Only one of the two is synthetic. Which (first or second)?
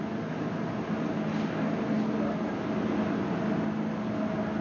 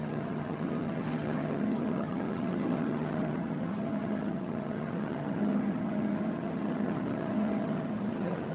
second